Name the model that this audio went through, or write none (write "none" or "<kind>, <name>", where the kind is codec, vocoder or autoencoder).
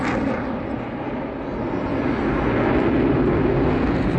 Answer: none